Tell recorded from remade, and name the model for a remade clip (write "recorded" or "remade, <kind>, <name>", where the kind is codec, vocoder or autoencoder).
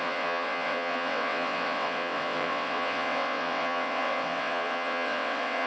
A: remade, vocoder, WaveNeXt